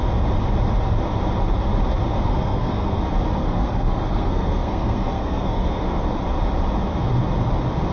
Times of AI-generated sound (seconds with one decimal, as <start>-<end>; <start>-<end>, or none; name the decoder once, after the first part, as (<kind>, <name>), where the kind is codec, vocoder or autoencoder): 2.2-3.0 (codec, SNAC); 3.4-6.0